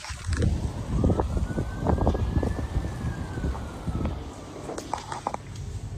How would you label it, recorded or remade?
recorded